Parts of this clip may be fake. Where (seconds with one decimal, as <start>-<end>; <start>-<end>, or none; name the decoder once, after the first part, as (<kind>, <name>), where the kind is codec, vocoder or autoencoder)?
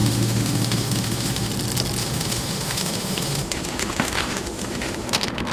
0.0-1.5 (autoencoder, DAC-VAE); 2.0-5.5